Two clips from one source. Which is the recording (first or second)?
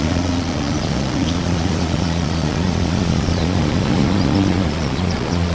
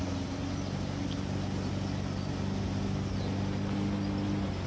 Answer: second